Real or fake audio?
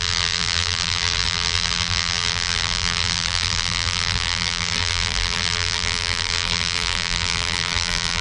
fake